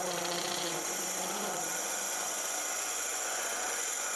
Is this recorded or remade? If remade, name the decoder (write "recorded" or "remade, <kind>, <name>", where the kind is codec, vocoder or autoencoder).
remade, vocoder, Vocos